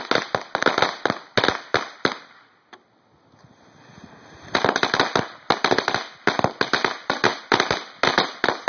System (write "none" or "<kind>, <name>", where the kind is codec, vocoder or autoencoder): none